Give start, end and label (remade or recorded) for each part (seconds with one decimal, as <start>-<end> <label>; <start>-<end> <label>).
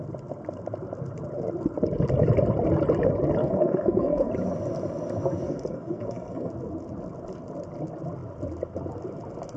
0.0-3.4 recorded; 3.4-4.3 remade; 4.3-5.4 recorded; 5.4-6.5 remade; 6.5-9.6 recorded